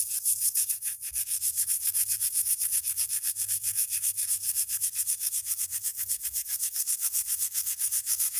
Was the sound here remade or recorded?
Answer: remade